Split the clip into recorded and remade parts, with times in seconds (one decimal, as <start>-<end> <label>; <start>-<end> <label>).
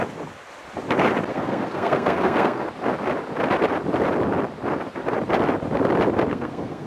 0.0-1.3 recorded; 1.3-2.6 remade; 2.6-6.3 recorded; 6.3-6.9 remade